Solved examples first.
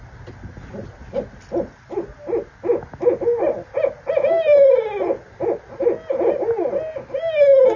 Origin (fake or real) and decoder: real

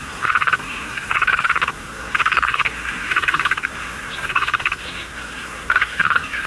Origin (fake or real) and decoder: fake, codec, SNAC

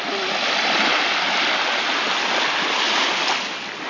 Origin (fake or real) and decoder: real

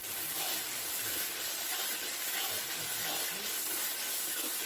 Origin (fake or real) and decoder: real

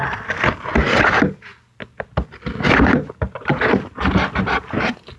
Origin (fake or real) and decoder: real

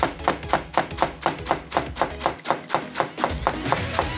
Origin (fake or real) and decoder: real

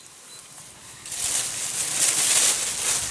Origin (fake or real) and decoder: real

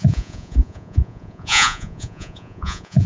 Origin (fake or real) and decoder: fake, vocoder, Vocos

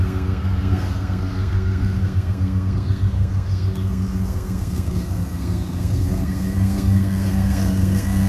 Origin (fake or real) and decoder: fake, codec, SNAC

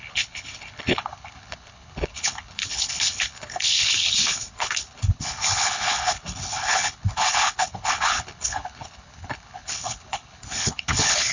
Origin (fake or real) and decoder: fake, codec, HILCodec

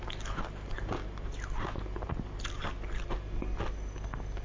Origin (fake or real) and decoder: real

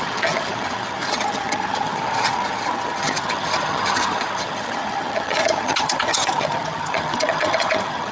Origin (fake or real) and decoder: fake, vocoder, HiFi-GAN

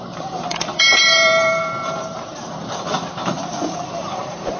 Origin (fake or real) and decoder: fake, vocoder, BigVGAN v2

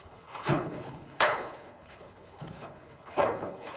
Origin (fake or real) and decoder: fake, codec, HILCodec